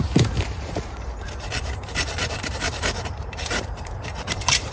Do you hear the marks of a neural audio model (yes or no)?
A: yes